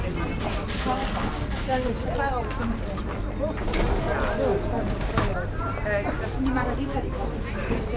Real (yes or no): yes